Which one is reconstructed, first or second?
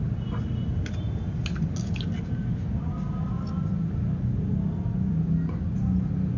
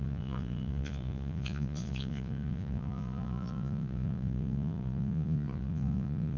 second